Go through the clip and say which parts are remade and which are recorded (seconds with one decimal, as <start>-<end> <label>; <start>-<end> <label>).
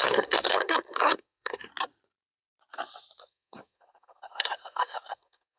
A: 0.0-1.7 remade; 1.7-3.2 recorded; 3.2-5.6 remade